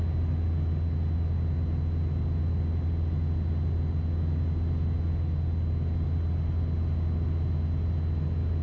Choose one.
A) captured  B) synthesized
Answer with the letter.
A